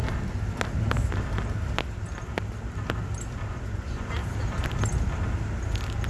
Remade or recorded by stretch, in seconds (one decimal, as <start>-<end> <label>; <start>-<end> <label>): 0.0-3.5 recorded; 3.5-4.2 remade; 4.2-6.1 recorded